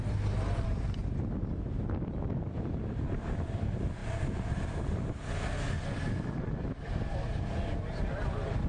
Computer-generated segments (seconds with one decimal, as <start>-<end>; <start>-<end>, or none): 4.0-5.1; 7.9-8.7